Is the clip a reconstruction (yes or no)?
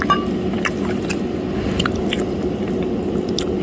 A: no